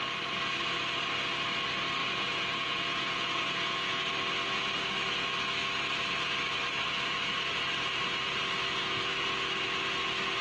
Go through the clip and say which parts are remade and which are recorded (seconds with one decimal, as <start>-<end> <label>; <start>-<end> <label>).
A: 0.0-2.0 recorded; 2.0-4.1 remade; 4.1-10.4 recorded

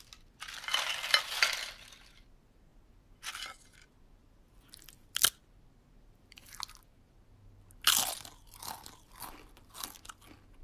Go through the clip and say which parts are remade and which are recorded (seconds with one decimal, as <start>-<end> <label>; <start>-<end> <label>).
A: 0.0-10.6 recorded

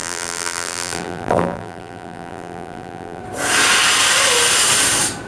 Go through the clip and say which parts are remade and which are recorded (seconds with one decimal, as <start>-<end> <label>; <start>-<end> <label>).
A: 0.0-3.2 remade; 3.2-5.3 recorded

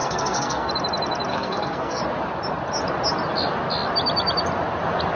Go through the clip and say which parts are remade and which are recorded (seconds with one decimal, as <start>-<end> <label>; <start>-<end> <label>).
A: 0.0-0.7 remade; 0.7-1.3 recorded; 1.3-2.0 remade; 2.0-5.2 recorded

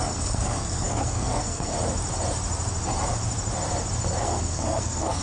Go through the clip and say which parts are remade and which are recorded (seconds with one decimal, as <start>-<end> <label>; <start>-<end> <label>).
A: 0.0-1.7 remade; 1.7-4.2 recorded; 4.2-5.2 remade

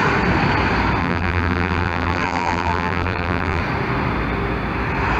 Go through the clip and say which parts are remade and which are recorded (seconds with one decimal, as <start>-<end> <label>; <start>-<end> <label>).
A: 0.0-1.0 recorded; 1.0-3.6 remade; 3.6-5.2 recorded